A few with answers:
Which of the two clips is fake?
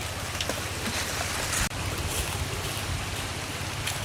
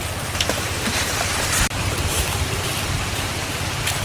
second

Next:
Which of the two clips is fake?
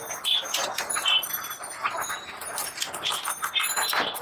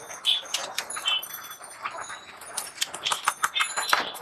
second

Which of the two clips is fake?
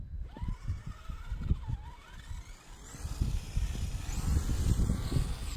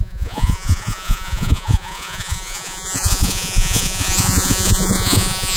second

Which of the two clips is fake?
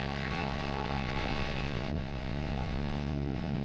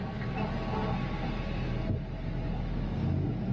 first